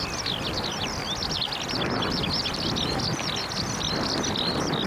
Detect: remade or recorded recorded